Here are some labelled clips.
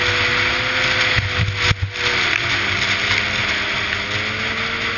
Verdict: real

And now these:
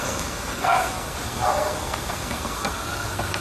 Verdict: fake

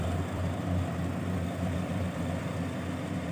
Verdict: fake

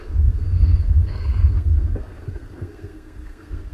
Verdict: fake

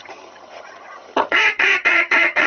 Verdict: fake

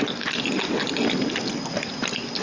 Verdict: real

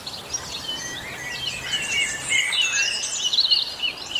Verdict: real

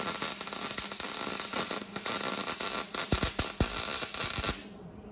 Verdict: real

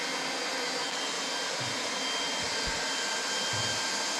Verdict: real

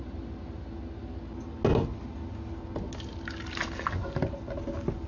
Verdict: real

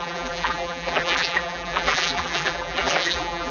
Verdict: fake